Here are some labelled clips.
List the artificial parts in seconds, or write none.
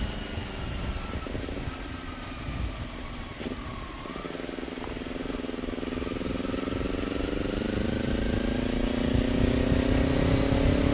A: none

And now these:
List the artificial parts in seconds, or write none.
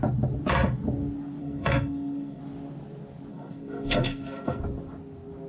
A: 1.4-2.4 (codec, SNAC); 3.3-4.6